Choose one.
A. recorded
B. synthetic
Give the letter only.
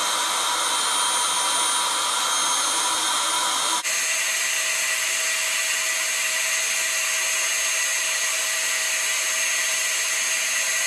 A